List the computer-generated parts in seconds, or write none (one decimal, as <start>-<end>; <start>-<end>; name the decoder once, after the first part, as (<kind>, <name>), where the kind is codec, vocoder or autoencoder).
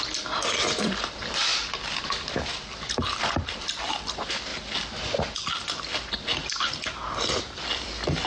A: 0.0-1.5 (vocoder, BigVGAN v2); 2.9-4.5; 5.5-6.4; 7.5-8.3